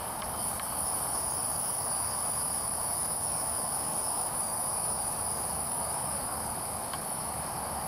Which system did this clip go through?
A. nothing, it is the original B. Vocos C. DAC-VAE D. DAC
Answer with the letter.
D